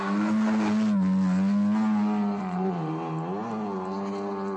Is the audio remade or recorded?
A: recorded